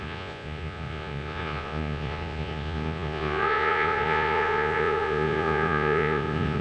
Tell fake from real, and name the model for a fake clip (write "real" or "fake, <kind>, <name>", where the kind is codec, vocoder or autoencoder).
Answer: fake, vocoder, Vocos